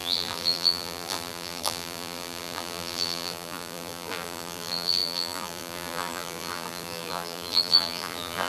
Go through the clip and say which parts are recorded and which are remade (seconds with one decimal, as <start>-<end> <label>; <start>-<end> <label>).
0.0-8.5 remade